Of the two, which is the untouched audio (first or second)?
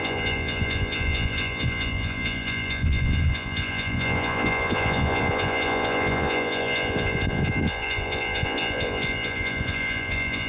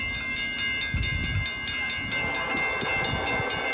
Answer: second